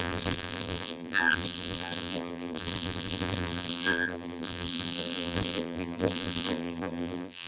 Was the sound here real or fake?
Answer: fake